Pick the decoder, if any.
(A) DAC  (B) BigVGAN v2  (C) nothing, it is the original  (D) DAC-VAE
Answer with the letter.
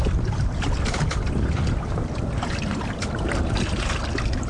C